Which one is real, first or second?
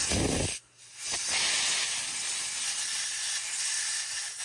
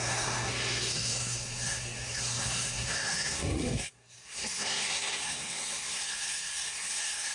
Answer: first